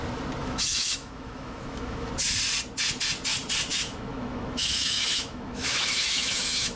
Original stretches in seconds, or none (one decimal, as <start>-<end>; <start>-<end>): 0.0-0.4; 2.1-3.7